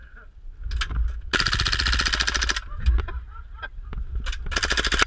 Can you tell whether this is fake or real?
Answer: real